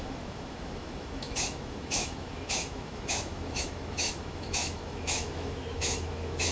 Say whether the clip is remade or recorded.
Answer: remade